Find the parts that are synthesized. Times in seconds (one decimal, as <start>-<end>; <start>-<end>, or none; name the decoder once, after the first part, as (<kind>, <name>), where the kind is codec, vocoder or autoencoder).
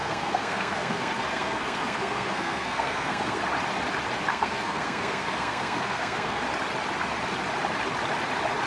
0.0-3.4 (codec, SNAC); 4.3-6.4